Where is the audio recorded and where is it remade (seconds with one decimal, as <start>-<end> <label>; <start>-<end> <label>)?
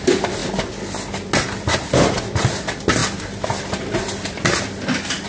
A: 0.0-5.3 recorded